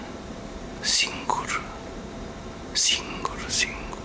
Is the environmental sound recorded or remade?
remade